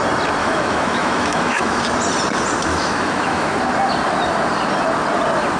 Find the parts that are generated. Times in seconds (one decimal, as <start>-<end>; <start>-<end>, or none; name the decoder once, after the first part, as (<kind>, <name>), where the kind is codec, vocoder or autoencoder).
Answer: 0.4-1.8 (autoencoder, DAC-VAE); 2.7-3.6